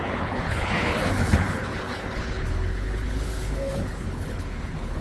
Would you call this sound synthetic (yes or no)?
yes